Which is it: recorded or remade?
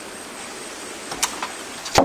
recorded